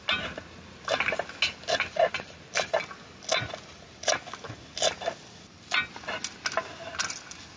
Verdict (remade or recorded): recorded